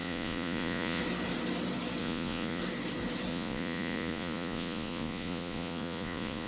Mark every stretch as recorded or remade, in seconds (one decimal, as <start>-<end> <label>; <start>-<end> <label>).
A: 0.0-1.0 remade; 1.0-2.0 recorded; 2.0-2.6 remade; 2.6-3.3 recorded; 3.3-6.5 remade